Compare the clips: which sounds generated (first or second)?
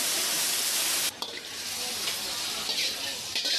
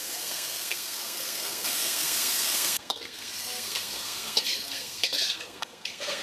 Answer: second